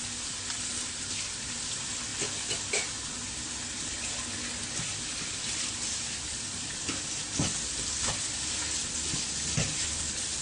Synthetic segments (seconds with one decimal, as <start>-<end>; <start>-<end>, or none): none